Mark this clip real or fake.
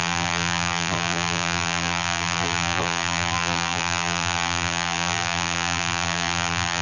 fake